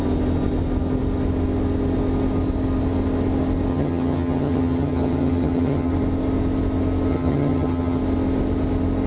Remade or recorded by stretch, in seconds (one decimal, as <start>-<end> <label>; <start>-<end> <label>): 0.0-3.7 recorded; 3.7-5.9 remade; 5.9-7.1 recorded; 7.1-8.0 remade; 8.0-9.1 recorded